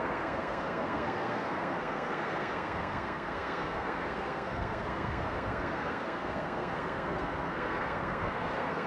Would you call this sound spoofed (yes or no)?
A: yes